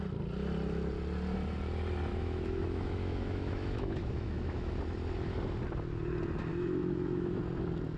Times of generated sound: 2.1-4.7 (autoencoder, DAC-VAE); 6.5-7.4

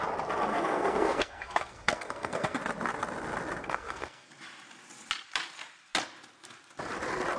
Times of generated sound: 0.5-2.6 (codec, SNAC); 3.6-4.3

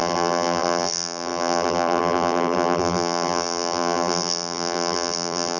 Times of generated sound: 0.0-5.6 (vocoder, BigVGAN v2)

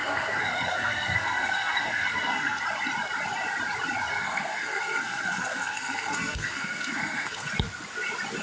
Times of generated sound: 0.0-2.6 (codec, SNAC); 4.1-7.5

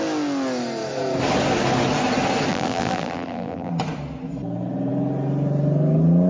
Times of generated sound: 2.5-3.7 (vocoder, BigVGAN v2)

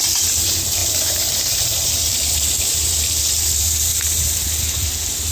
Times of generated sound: 0.0-3.9 (vocoder, BigVGAN v2); 4.6-5.3

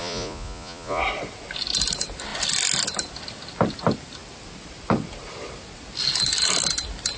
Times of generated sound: 0.0-1.0 (vocoder, Vocos)

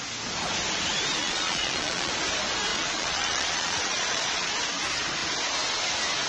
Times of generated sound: 1.2-2.1 (vocoder, Vocos); 2.7-4.5